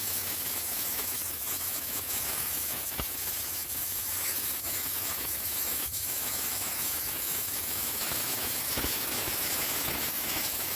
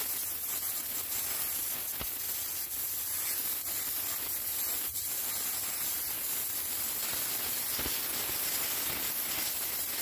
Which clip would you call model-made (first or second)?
first